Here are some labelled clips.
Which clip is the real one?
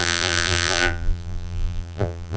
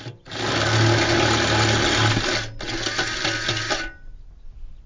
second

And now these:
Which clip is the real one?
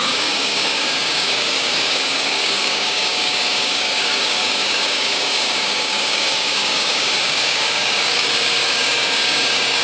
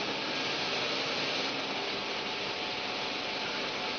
second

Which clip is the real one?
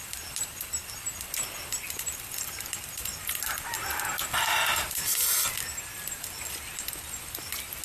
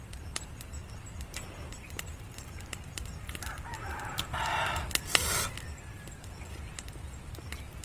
first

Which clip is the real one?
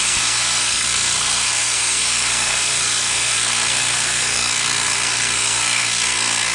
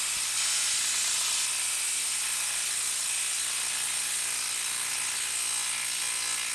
second